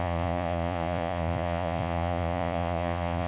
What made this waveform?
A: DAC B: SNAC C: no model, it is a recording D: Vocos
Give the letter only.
D